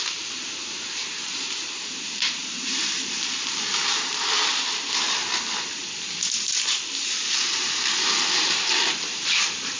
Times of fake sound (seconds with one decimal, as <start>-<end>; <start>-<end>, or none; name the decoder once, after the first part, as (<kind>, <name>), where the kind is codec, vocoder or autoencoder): 0.0-5.2 (vocoder, BigVGAN v2); 6.5-9.8